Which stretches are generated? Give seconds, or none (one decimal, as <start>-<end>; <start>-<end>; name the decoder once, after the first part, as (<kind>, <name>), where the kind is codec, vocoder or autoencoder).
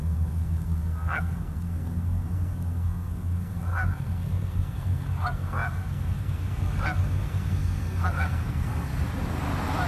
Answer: 0.0-8.9 (codec, SNAC)